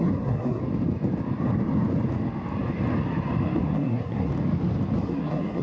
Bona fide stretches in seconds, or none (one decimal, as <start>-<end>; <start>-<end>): 0.6-3.6; 4.3-5.0